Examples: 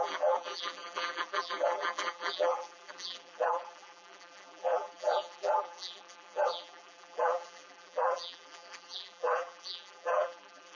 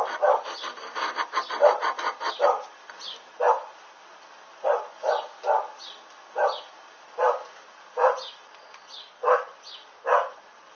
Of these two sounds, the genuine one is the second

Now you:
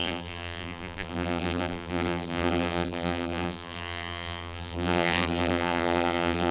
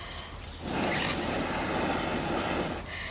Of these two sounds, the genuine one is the second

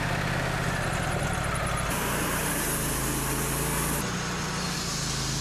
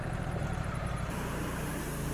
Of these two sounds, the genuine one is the first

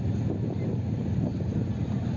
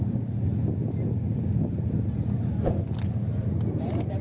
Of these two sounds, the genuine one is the second